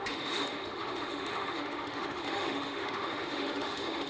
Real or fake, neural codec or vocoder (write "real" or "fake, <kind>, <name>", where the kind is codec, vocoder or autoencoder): fake, autoencoder, DAC-VAE